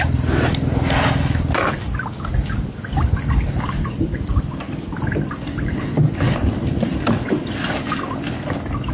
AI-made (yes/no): no